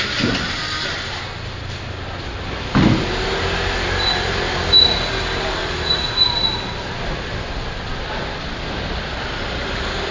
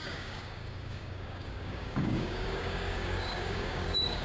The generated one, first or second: second